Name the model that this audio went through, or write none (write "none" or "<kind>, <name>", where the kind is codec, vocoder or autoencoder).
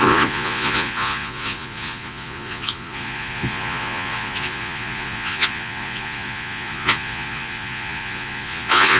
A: vocoder, Vocos